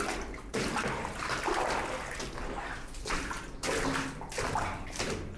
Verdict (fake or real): real